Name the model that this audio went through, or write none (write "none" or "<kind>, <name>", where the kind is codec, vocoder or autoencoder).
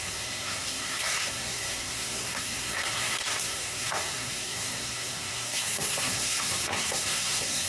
codec, SNAC